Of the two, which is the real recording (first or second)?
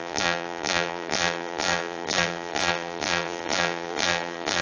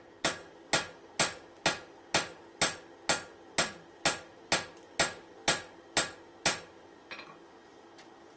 second